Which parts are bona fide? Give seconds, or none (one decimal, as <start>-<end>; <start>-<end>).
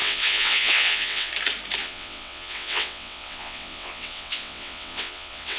1.3-1.8